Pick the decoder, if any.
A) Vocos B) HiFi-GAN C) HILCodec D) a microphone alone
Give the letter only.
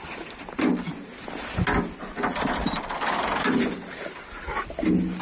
D